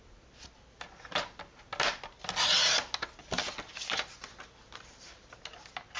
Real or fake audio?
real